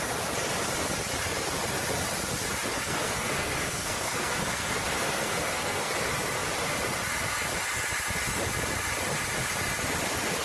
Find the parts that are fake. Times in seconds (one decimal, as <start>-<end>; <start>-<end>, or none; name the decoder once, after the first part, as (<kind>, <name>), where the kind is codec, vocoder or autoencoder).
2.7-5.9 (codec, SNAC)